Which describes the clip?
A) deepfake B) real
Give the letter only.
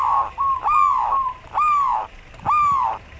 B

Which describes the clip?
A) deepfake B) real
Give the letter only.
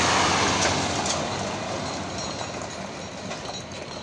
B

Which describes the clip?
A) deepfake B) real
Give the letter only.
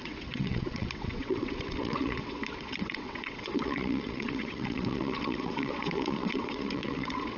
A